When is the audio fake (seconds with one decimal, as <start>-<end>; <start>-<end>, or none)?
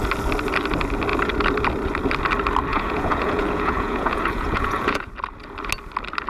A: 2.7-5.1